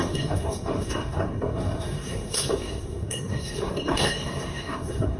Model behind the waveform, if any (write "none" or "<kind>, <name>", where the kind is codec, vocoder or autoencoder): codec, SNAC